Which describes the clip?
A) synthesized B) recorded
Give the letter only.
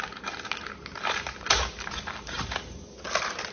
A